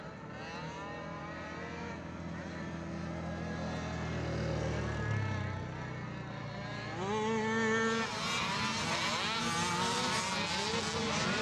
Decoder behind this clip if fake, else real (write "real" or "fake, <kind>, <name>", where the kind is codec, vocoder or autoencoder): real